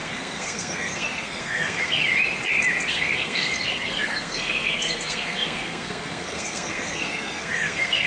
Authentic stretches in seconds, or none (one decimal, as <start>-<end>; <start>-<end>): 2.0-2.9